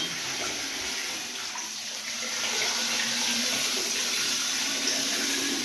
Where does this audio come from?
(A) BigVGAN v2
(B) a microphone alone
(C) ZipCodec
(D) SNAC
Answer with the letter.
B